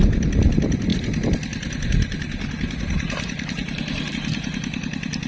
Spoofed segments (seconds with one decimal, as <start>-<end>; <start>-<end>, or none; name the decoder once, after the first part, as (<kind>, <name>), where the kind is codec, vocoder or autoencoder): none